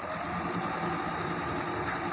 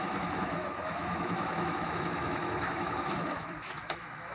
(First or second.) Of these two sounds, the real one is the first